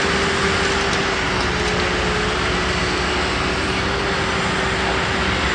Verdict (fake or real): real